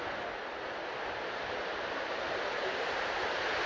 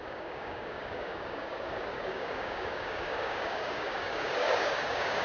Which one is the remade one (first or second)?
second